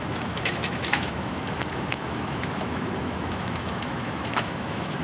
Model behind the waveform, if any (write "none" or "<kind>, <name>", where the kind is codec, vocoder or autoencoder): autoencoder, DAC-VAE